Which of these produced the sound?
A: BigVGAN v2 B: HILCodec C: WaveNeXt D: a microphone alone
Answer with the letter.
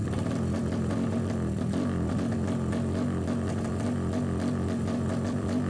A